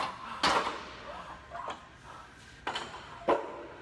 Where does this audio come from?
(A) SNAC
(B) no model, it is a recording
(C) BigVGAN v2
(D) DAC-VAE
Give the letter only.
B